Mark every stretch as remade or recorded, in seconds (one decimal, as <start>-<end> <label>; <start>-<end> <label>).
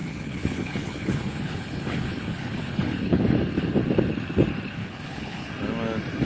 0.0-3.2 remade; 3.2-4.8 recorded; 4.8-5.5 remade; 5.5-6.3 recorded